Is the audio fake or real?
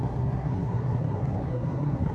fake